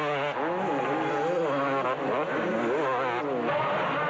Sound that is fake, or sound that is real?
real